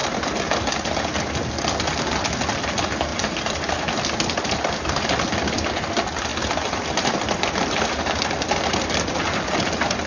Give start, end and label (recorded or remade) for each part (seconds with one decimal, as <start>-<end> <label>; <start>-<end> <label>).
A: 0.0-3.1 recorded; 3.1-3.7 remade; 3.7-6.3 recorded; 6.3-7.5 remade; 7.5-10.1 recorded